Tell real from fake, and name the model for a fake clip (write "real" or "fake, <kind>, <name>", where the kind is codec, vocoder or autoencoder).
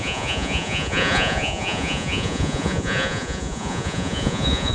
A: fake, vocoder, Vocos